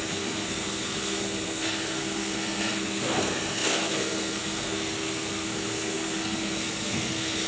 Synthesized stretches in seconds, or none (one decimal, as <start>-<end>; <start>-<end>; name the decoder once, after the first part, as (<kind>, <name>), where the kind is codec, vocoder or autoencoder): 0.0-7.5 (codec, SNAC)

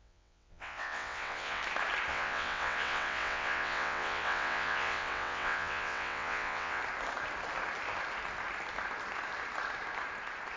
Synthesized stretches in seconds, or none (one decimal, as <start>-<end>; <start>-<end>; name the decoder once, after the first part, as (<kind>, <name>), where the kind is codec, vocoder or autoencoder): 0.0-1.6 (vocoder, WaveNeXt); 2.1-6.8

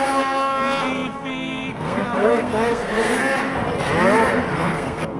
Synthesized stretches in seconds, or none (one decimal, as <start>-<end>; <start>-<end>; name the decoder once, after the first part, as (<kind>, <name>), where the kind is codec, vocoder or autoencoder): 0.0-3.2 (codec, SNAC); 4.5-5.2